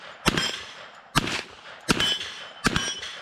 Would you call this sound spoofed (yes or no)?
no